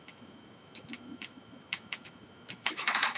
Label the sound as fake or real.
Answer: fake